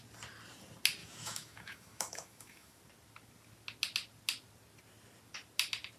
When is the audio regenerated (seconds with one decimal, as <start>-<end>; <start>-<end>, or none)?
1.0-2.8